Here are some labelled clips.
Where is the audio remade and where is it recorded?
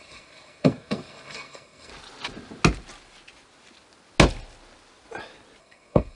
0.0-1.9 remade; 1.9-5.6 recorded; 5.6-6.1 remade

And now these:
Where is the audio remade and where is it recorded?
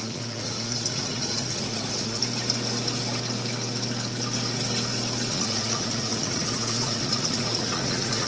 0.0-2.2 remade; 2.2-5.3 recorded; 5.3-8.3 remade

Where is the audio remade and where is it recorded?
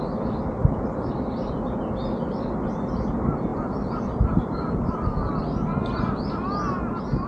0.0-0.6 recorded; 0.6-1.1 remade; 1.1-3.5 recorded; 3.5-5.3 remade; 5.3-7.3 recorded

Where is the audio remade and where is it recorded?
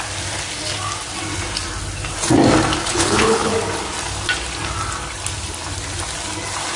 0.0-2.9 recorded; 2.9-3.5 remade; 3.5-6.8 recorded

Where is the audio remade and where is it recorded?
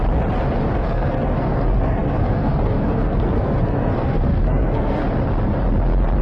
0.0-0.7 recorded; 0.7-5.0 remade; 5.0-6.2 recorded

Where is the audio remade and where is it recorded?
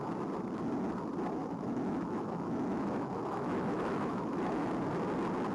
0.0-1.4 recorded; 1.4-4.7 remade; 4.7-5.5 recorded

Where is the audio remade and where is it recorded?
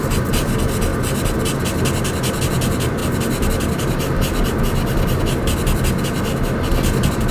0.0-0.9 remade; 0.9-2.4 recorded; 2.4-3.0 remade; 3.0-7.3 recorded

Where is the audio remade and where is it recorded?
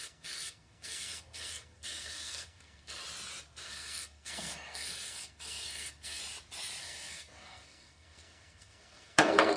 0.0-3.0 remade; 3.0-3.6 recorded; 3.6-6.2 remade; 6.2-6.8 recorded; 6.8-9.6 remade